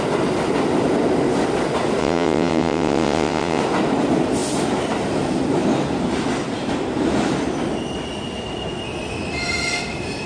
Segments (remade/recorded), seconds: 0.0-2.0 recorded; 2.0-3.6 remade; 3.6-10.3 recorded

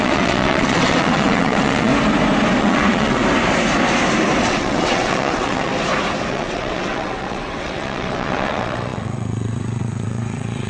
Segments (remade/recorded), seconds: 0.0-1.9 remade; 1.9-2.6 recorded; 2.6-3.2 remade; 3.2-4.4 recorded; 4.4-5.7 remade; 5.7-6.3 recorded; 6.3-10.7 remade

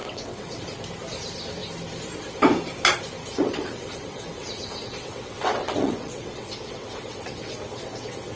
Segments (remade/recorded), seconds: 0.0-0.6 remade; 0.6-3.2 recorded; 3.2-8.4 remade

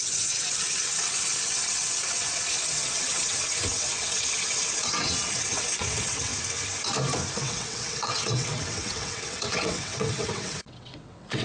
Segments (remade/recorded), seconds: 0.0-6.3 remade; 6.3-7.4 recorded; 7.4-11.4 remade

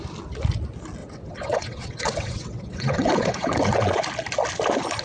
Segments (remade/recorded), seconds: 0.0-1.0 recorded; 1.0-4.0 remade; 4.0-5.0 recorded